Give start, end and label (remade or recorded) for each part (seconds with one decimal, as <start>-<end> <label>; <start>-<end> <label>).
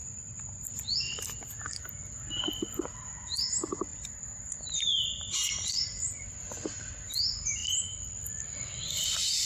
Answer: 0.0-0.7 remade; 0.7-3.9 recorded; 3.9-6.9 remade; 6.9-9.5 recorded